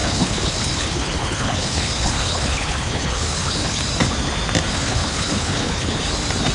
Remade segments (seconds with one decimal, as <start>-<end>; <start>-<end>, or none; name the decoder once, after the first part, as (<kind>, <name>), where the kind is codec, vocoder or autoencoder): 0.0-3.8 (codec, HILCodec); 4.7-6.0